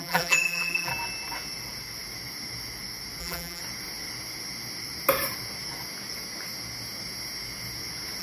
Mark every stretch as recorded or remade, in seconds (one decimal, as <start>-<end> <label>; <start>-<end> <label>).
0.0-0.9 remade; 0.9-3.2 recorded; 3.2-3.6 remade; 3.6-8.2 recorded